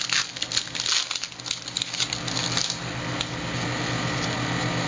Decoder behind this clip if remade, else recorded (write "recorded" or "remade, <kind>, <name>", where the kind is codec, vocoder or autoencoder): recorded